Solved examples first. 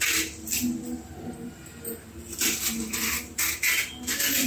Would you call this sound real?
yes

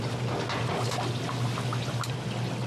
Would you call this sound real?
yes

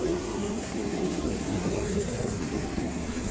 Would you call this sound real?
no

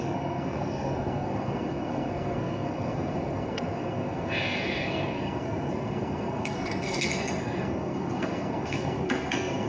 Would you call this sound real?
no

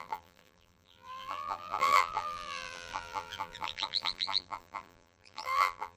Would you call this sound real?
no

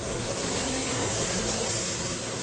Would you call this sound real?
no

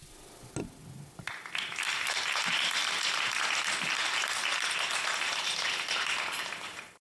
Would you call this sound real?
yes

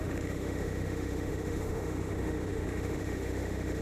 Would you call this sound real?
no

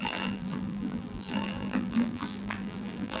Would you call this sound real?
no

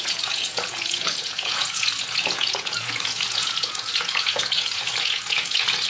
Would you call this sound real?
no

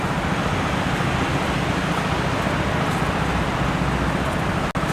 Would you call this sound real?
yes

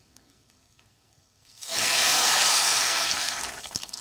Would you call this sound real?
no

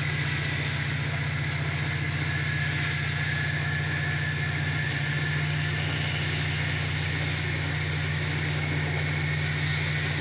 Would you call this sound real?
yes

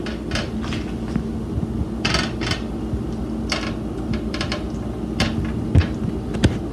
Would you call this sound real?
yes